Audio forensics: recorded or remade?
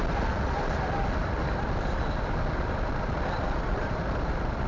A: remade